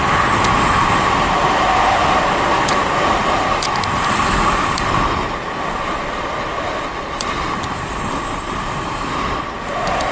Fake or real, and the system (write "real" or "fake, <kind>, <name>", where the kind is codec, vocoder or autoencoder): real